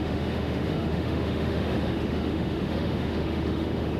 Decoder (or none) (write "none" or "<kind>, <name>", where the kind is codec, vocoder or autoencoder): autoencoder, DAC-VAE